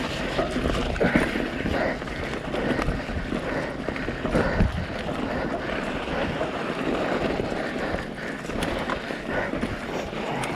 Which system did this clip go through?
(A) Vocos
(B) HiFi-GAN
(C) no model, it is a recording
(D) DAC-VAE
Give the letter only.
C